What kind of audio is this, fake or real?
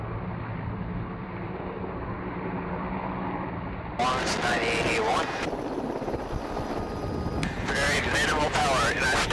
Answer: real